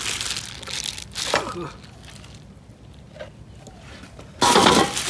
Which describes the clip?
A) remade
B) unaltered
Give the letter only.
B